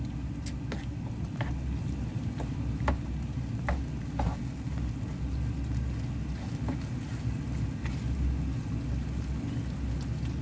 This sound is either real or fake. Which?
real